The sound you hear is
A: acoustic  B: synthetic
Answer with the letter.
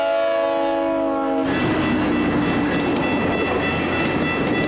A